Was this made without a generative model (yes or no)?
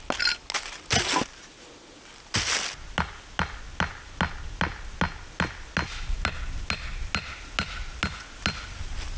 yes